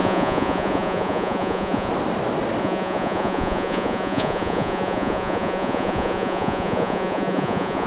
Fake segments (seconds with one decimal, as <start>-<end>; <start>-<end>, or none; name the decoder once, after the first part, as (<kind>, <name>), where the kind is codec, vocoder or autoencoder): 0.0-1.9 (vocoder, Vocos); 2.6-7.9